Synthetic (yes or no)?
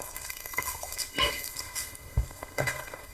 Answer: yes